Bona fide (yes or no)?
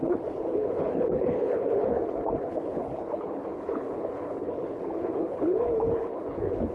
no